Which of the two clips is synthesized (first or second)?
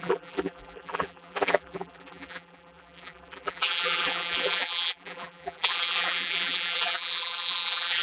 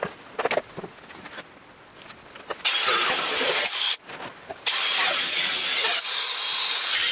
first